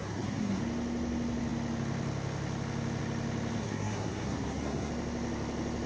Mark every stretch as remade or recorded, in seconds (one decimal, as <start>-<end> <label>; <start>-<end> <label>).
0.0-0.6 remade; 0.6-3.6 recorded; 3.6-4.9 remade; 4.9-5.9 recorded